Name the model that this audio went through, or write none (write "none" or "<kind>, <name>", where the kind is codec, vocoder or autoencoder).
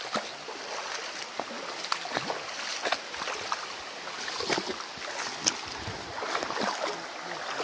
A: none